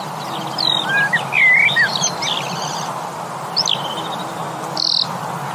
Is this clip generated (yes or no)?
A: no